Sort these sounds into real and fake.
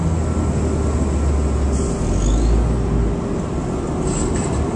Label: real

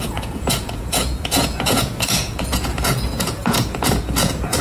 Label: fake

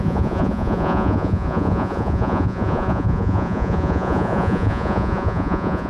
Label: fake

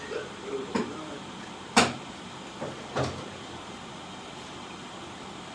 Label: real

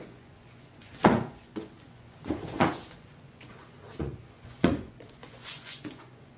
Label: fake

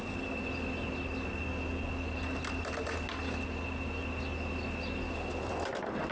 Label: real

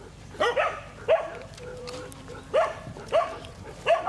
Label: fake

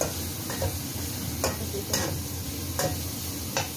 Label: real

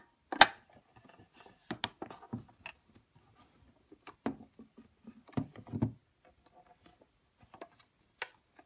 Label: real